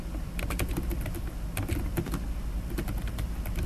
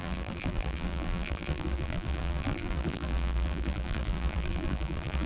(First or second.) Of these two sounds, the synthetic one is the second